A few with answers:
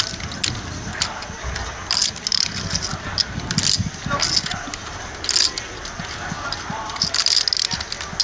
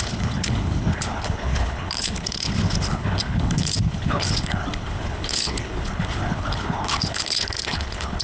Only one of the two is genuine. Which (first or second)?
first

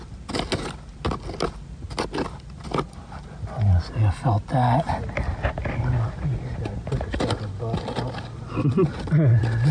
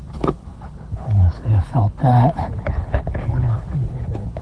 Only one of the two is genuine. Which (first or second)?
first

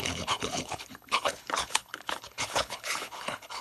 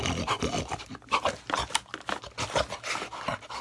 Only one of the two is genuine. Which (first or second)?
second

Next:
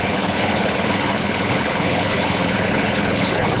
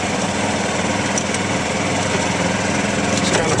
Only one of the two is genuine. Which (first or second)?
second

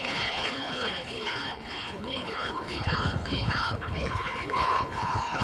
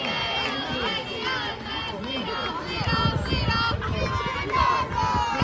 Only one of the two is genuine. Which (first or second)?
second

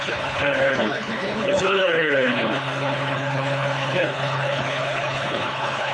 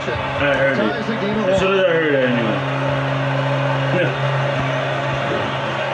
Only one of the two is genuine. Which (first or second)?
second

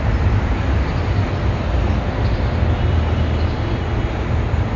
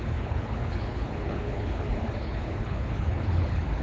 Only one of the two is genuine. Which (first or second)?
first